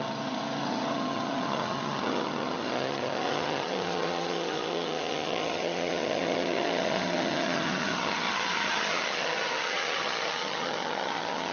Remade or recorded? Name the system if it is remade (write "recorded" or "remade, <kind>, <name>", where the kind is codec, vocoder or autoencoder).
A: remade, vocoder, HiFi-GAN